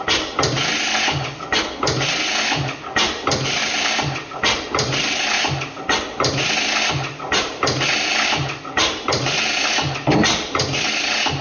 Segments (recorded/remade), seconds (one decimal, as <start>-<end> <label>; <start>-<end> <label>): 0.0-11.4 recorded